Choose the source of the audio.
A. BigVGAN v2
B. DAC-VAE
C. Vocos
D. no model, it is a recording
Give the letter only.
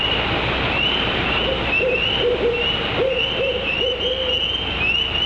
D